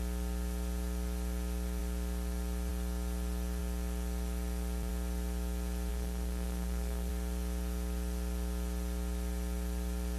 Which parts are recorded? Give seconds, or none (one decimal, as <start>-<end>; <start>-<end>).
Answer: 0.0-5.9; 7.1-10.2